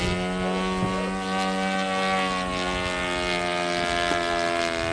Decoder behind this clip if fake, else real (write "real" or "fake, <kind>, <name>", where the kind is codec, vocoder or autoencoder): real